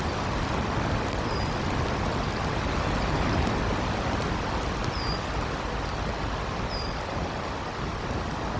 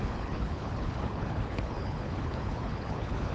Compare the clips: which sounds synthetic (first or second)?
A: second